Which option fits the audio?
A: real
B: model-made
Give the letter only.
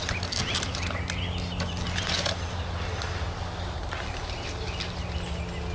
A